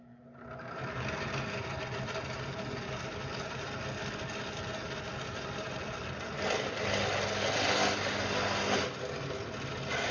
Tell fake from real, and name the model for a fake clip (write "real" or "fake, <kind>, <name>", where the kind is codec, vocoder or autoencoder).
real